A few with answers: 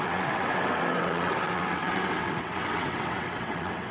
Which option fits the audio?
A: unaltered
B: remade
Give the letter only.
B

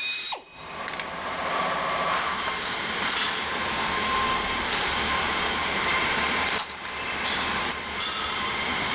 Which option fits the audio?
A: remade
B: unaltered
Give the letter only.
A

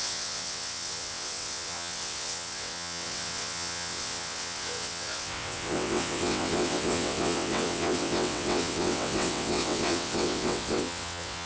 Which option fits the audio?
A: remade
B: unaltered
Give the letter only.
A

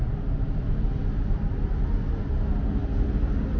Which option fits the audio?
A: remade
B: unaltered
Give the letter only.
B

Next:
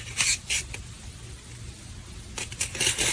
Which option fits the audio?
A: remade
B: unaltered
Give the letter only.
B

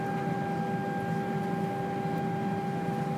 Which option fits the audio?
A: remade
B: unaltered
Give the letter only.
B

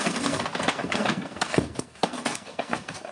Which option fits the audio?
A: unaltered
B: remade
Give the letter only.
B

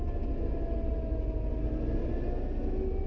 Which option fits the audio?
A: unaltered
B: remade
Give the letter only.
A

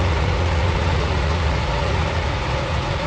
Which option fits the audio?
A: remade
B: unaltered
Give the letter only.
A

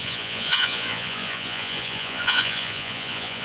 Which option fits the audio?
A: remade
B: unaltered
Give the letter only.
A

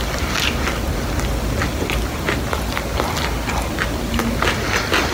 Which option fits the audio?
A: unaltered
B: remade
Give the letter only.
A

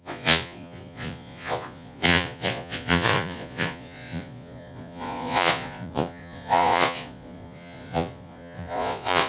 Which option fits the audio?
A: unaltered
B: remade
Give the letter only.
B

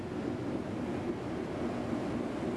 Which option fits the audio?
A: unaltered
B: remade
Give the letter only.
A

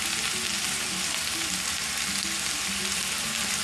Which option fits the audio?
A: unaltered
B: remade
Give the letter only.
A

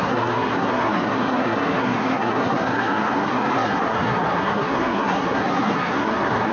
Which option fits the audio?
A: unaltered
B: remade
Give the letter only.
B